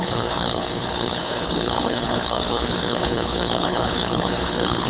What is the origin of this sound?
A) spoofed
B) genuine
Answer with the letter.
A